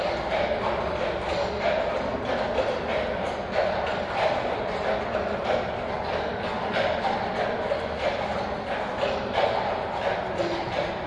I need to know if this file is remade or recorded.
recorded